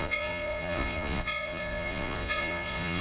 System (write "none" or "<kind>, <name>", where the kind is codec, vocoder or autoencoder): vocoder, Vocos